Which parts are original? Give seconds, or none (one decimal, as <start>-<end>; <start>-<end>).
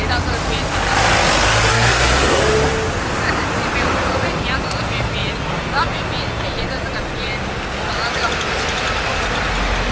0.0-1.7; 2.4-9.9